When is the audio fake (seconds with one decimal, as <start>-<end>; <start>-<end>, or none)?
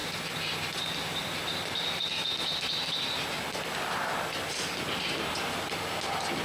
none